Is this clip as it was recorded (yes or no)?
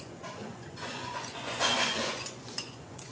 no